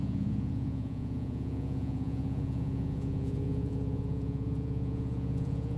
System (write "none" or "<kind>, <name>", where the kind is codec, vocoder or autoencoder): vocoder, Vocos